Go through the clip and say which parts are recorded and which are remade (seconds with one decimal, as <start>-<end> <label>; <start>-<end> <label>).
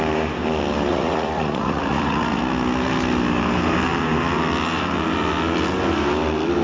0.0-0.9 recorded; 0.9-2.4 remade; 2.4-6.6 recorded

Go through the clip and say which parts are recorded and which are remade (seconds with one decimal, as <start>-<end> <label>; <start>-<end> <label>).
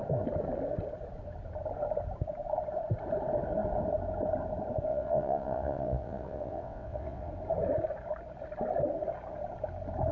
0.0-4.9 recorded; 4.9-7.3 remade; 7.3-10.1 recorded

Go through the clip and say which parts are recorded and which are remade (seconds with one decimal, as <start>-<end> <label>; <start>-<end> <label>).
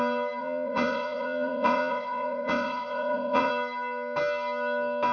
0.0-0.4 recorded; 0.4-3.5 remade; 3.5-5.1 recorded